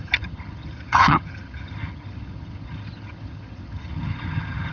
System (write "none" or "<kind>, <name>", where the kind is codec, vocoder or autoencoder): vocoder, HiFi-GAN